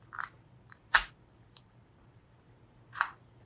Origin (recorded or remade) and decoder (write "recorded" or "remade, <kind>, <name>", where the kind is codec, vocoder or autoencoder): remade, vocoder, BigVGAN v2